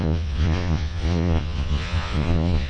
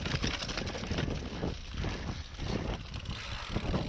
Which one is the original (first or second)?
second